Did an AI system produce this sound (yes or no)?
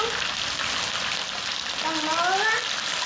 no